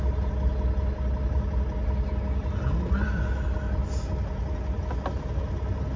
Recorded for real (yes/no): yes